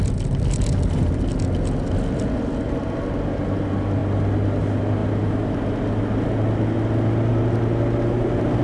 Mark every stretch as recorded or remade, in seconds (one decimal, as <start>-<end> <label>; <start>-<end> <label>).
0.0-8.6 recorded